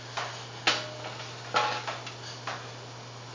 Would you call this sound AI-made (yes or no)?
no